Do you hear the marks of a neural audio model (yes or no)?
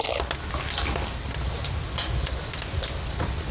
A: no